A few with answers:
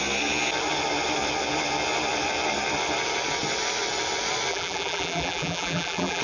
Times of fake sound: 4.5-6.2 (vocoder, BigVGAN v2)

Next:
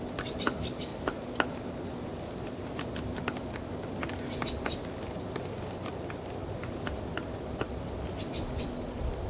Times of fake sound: none

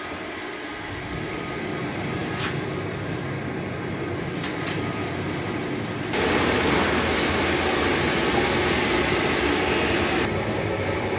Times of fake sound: 2.2-3.9 (vocoder, BigVGAN v2)

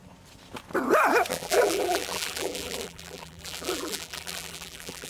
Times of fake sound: 1.3-5.1 (vocoder, BigVGAN v2)

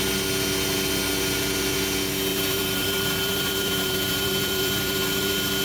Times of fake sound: 2.3-5.6 (vocoder, BigVGAN v2)

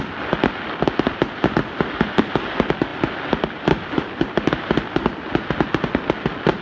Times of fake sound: 2.9-5.5 (vocoder, BigVGAN v2)

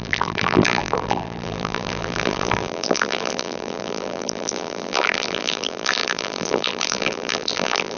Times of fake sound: 0.0-8.0 (vocoder, BigVGAN v2)

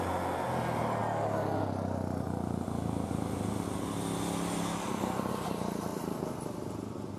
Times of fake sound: none